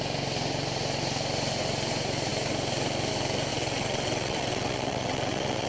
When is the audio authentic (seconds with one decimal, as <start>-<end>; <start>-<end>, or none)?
0.0-3.5